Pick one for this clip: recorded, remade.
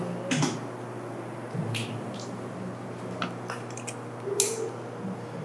recorded